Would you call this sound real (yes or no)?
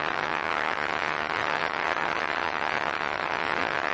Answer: no